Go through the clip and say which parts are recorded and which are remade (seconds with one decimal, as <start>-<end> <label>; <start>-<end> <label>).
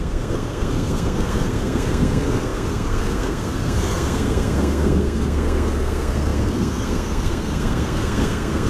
0.0-8.7 remade